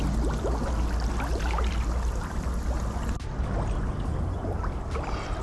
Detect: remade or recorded recorded